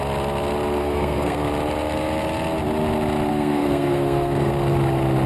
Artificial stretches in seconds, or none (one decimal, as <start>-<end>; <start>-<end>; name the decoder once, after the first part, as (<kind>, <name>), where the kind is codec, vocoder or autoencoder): 0.8-1.4 (codec, SNAC); 3.3-4.5